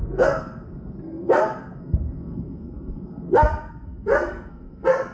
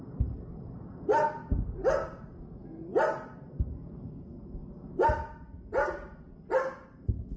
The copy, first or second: first